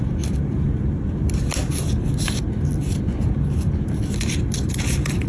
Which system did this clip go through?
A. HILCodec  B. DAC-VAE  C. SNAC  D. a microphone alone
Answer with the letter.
D